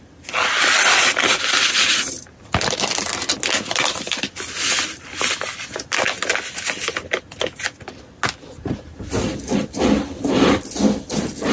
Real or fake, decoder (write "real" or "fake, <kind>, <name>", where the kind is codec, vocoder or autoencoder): real